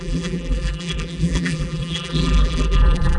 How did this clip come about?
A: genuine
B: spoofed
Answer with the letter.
B